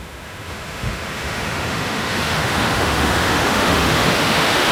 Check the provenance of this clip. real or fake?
fake